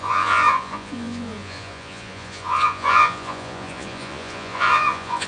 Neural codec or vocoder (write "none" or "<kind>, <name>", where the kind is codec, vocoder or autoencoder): vocoder, Vocos